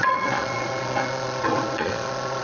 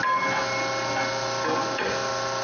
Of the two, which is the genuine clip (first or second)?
second